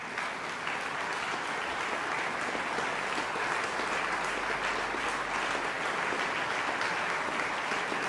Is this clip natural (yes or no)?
yes